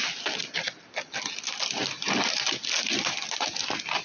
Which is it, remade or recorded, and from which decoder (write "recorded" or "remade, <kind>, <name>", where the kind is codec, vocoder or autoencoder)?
recorded